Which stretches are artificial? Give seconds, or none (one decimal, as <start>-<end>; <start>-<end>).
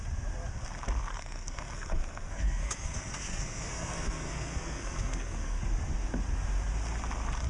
1.1-5.6